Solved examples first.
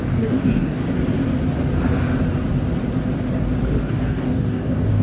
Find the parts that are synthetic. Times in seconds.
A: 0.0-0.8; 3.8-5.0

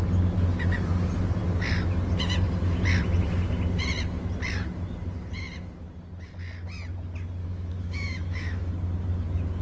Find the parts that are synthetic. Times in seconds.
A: 7.4-8.7

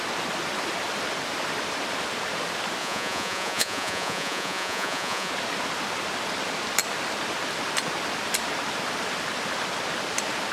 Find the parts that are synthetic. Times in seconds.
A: 2.8-5.3

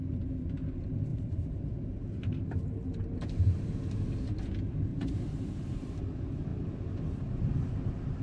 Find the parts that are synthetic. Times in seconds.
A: 1.1-4.1; 4.9-6.0